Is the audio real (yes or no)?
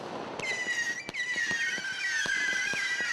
yes